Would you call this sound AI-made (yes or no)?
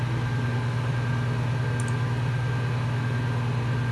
no